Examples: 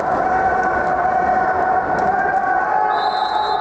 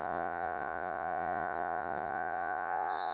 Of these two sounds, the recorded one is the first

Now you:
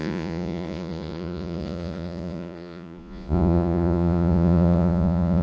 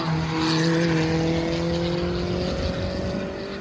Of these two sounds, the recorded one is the second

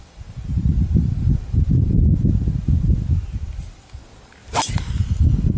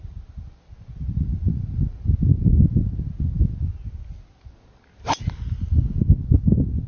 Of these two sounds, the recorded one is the second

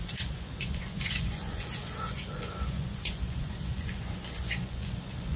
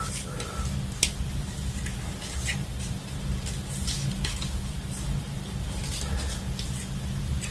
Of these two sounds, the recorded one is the second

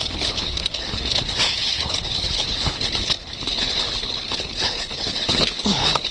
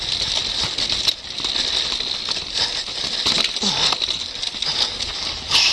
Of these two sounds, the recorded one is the second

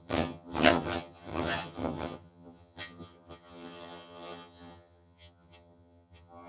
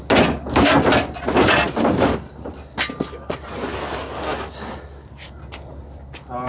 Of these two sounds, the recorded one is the second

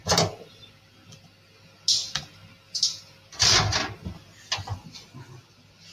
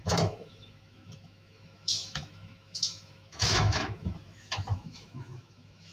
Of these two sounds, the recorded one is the first